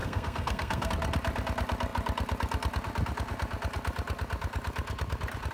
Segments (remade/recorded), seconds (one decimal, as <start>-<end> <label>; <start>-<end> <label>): 0.0-0.9 remade; 0.9-5.5 recorded